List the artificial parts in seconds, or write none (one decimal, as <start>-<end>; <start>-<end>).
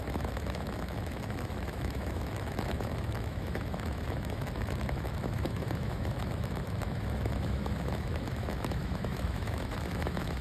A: 0.0-10.4